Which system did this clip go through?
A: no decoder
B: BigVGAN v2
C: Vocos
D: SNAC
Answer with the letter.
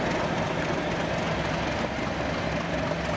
A